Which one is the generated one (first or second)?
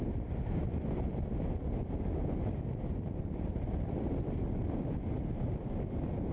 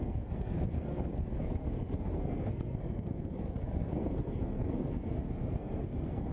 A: second